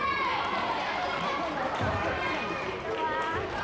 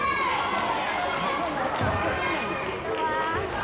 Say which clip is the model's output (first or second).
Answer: first